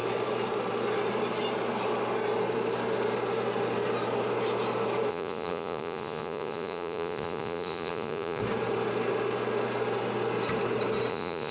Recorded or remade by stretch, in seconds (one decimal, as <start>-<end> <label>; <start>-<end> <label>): 0.0-5.1 recorded; 5.1-8.4 remade; 8.4-11.1 recorded; 11.1-11.5 remade